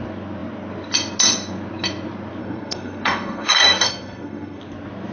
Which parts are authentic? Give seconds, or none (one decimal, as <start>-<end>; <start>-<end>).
0.0-2.4; 4.6-5.1